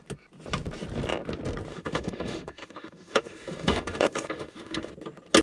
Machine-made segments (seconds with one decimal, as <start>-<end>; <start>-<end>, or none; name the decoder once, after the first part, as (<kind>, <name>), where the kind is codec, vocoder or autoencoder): 1.7-4.9 (autoencoder, DAC-VAE)